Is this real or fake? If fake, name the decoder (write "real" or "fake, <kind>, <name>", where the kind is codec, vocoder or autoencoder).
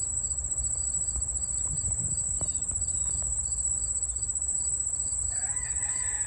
fake, vocoder, BigVGAN v2